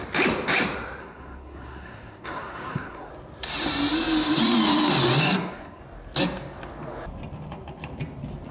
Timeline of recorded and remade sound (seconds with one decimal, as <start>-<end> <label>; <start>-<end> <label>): 0.0-1.0 recorded; 1.0-3.1 remade; 3.1-5.2 recorded; 5.2-5.8 remade; 5.8-8.5 recorded